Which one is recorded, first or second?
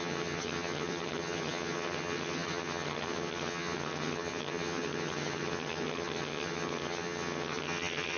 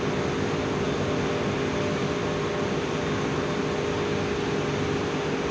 second